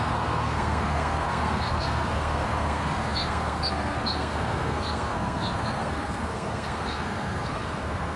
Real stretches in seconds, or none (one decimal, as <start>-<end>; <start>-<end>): none